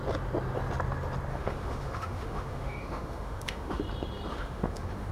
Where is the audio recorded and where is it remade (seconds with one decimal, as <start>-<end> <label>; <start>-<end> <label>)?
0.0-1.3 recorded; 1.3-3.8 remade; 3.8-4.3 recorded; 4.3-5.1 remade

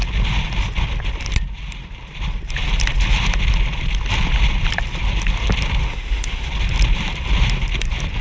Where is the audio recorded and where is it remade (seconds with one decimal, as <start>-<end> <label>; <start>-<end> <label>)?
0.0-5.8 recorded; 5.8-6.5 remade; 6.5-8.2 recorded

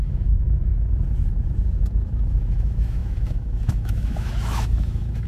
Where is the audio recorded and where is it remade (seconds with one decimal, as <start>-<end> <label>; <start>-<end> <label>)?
0.0-0.7 remade; 0.7-1.9 recorded; 1.9-5.3 remade

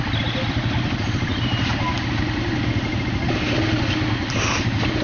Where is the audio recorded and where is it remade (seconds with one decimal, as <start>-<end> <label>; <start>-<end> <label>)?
0.0-5.0 recorded

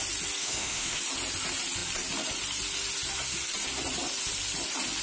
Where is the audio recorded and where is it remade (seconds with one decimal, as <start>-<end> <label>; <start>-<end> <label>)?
0.0-0.4 recorded; 0.4-1.0 remade; 1.0-5.0 recorded

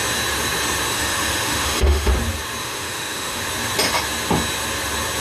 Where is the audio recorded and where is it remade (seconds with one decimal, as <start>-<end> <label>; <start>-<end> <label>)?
0.0-0.9 recorded; 0.9-2.1 remade; 2.1-2.6 recorded; 2.6-3.4 remade; 3.4-5.2 recorded